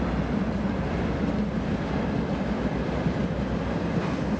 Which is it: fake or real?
real